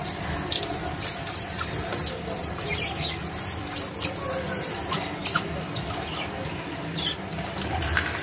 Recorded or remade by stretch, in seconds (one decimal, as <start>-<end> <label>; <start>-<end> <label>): 0.0-8.2 recorded